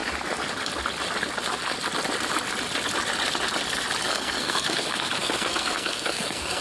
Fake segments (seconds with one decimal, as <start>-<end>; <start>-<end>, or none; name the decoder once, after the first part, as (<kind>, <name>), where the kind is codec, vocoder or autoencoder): 4.0-6.6 (codec, SNAC)